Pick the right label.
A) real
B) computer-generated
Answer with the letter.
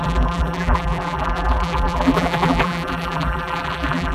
B